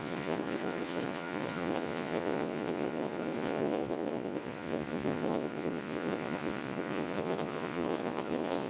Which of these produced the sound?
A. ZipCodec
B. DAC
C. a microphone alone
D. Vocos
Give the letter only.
D